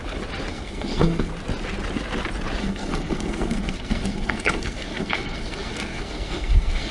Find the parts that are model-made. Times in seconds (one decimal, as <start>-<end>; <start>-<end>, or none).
0.5-1.3; 2.6-6.9